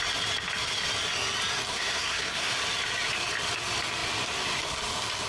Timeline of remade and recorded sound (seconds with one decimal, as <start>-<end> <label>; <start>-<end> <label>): 0.0-1.7 recorded; 1.7-2.5 remade; 2.5-5.3 recorded